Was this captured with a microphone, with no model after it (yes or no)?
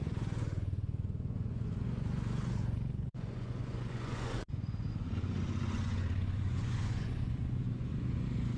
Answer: no